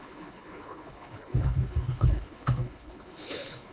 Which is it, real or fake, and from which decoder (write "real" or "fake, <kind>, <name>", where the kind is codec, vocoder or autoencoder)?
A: fake, codec, HILCodec